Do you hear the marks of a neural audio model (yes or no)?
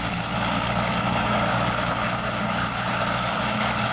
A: yes